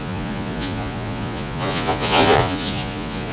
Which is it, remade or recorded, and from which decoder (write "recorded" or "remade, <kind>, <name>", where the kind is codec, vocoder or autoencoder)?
remade, vocoder, Vocos